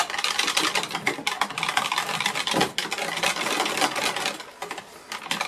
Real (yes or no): yes